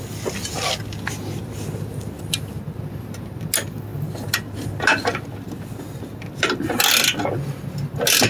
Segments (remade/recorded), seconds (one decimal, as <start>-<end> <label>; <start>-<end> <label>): 0.0-8.3 recorded